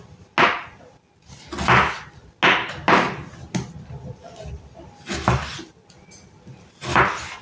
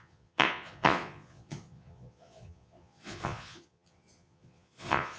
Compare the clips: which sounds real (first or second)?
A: first